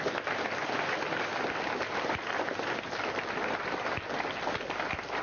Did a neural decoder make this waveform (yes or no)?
no